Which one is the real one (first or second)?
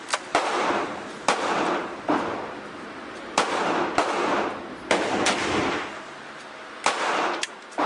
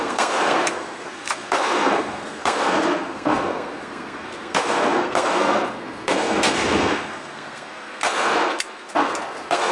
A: first